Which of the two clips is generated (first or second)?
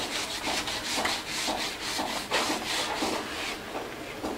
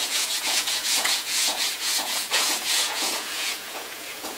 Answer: second